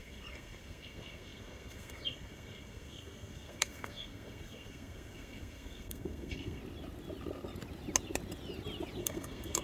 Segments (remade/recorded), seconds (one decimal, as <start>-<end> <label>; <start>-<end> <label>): 0.0-6.6 remade; 6.6-9.0 recorded; 9.0-9.6 remade